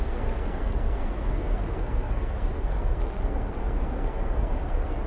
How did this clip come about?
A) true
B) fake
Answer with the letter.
B